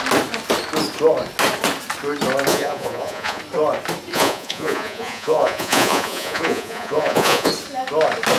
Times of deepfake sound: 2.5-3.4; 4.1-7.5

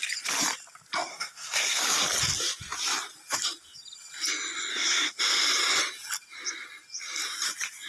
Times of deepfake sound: 1.1-1.8; 4.7-5.2

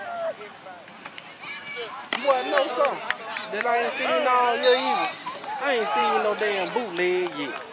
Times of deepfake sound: 0.9-3.9; 6.0-6.7

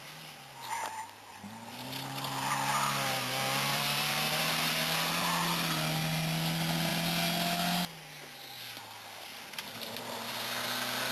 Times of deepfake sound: 3.7-4.4

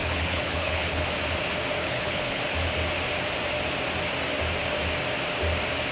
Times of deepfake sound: 0.0-1.0; 1.8-2.4

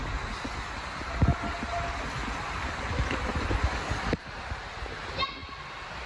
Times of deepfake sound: none